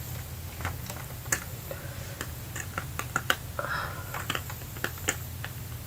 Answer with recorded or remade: recorded